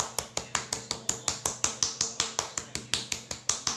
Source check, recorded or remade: recorded